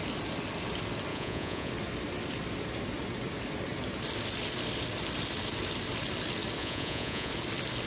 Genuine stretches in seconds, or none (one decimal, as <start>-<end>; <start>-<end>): 0.0-1.1; 1.7-6.6; 7.3-7.9